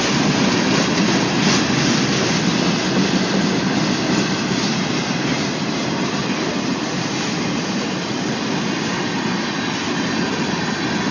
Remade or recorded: recorded